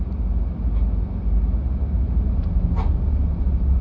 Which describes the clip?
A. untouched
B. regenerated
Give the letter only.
A